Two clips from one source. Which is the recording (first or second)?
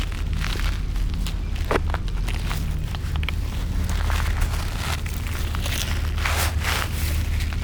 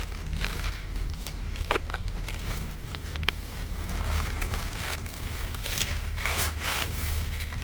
first